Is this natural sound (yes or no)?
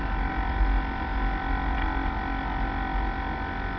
yes